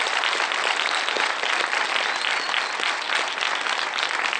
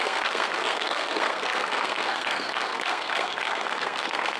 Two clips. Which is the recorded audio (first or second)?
first